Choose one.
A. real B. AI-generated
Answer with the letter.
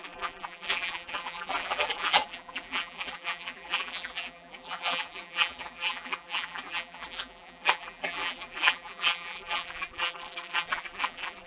B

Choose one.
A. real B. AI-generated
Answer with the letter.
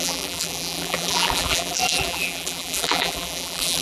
B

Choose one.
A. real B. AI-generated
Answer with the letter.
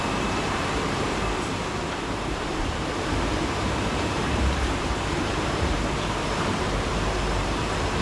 B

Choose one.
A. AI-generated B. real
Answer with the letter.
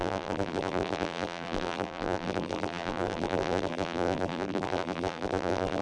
A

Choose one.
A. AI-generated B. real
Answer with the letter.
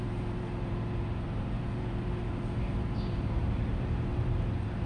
A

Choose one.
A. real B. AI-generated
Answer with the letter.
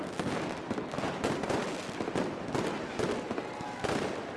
A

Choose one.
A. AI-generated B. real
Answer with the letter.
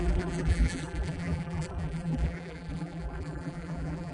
A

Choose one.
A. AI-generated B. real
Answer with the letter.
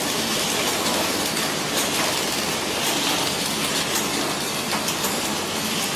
B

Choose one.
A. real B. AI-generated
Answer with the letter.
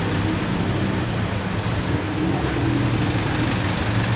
A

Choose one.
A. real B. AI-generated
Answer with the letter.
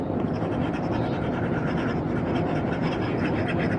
B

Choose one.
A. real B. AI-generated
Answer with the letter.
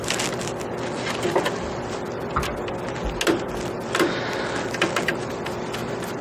A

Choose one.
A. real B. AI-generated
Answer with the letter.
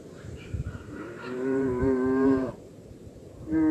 B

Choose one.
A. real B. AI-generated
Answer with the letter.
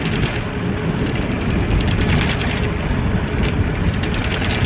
A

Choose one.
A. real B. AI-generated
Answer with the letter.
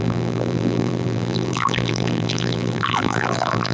B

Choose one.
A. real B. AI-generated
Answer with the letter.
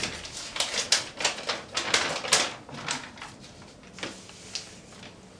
A